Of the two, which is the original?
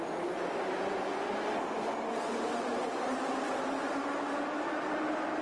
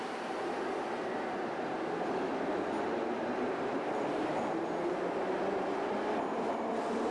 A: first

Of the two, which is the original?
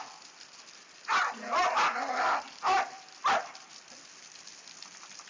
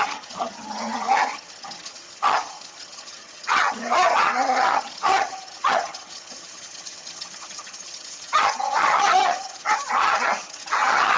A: first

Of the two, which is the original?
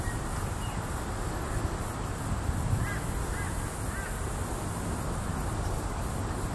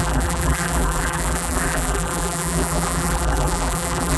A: first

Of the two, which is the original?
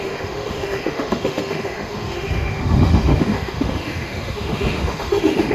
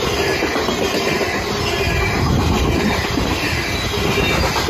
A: second